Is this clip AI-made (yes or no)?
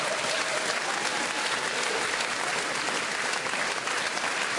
no